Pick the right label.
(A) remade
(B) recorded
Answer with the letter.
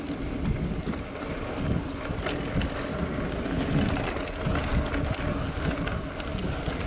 B